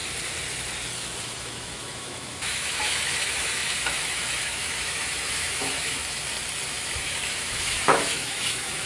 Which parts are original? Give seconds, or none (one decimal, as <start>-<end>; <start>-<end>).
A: 0.0-1.2; 6.0-6.7